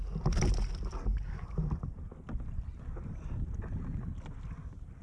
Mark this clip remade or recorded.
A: recorded